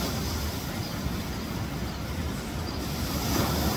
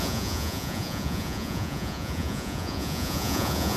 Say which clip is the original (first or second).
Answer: first